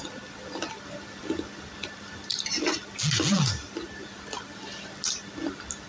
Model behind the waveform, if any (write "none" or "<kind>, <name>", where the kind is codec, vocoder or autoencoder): none